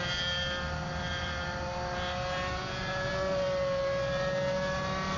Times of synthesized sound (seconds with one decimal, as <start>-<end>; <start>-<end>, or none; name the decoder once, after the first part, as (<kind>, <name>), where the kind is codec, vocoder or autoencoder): 2.6-3.1 (vocoder, Vocos)